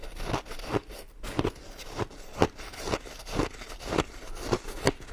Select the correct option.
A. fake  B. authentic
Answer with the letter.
B